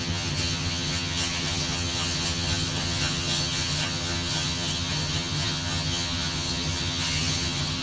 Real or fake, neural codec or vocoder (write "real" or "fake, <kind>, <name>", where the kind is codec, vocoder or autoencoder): fake, vocoder, HiFi-GAN